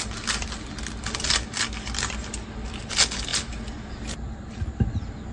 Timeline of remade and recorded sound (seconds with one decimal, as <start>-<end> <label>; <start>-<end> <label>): 0.0-5.3 recorded